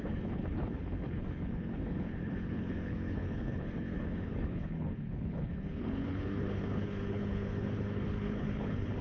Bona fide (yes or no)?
no